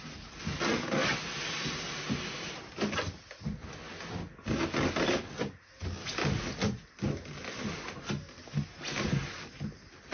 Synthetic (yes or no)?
no